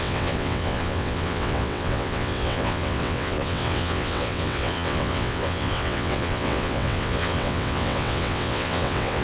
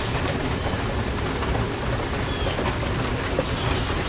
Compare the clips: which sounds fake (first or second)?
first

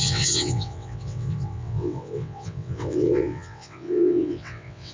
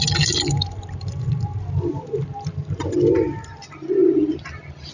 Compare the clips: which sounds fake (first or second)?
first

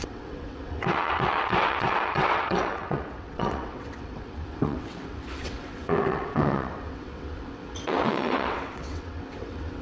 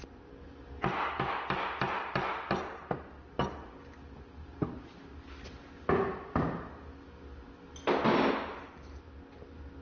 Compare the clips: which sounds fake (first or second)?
first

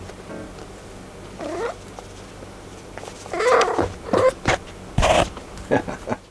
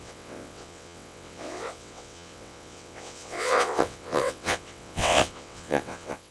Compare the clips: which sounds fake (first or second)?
second